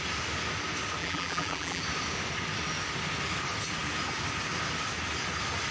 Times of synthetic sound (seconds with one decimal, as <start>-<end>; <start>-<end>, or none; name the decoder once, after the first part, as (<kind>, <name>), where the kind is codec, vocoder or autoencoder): 1.0-1.8 (vocoder, BigVGAN v2)